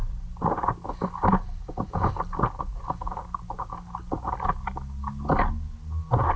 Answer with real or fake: real